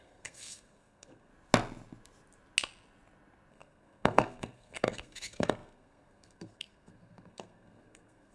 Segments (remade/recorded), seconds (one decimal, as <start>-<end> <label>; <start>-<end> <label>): 0.0-1.3 remade; 1.3-3.5 recorded; 3.5-8.3 remade